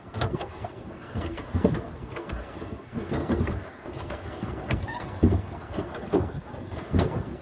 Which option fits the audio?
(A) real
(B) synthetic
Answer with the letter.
B